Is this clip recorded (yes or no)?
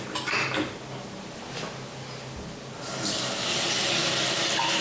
yes